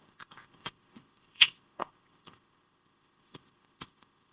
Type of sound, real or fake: fake